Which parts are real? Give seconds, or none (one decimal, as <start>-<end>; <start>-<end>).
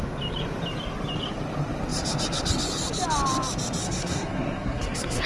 0.0-3.8